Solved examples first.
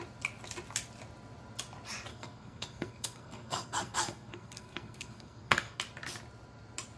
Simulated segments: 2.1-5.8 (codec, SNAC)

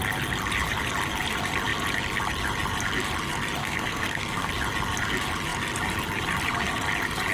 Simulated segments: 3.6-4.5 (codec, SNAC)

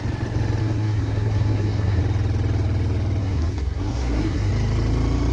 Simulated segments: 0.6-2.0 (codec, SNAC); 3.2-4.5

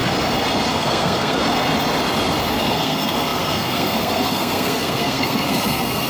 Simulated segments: 0.7-1.4 (codec, SNAC); 2.5-6.1

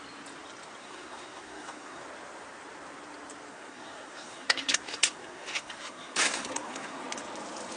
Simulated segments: 0.8-2.0 (codec, SNAC); 3.5-7.0